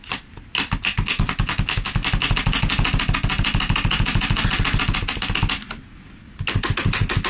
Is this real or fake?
real